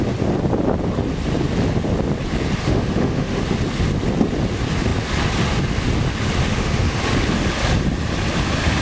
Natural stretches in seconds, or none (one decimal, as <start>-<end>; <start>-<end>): 0.0-2.6; 3.4-6.4; 7.0-8.8